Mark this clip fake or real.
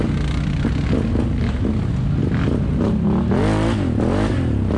real